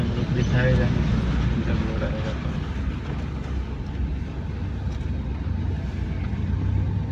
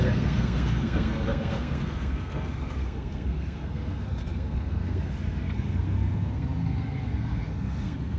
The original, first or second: first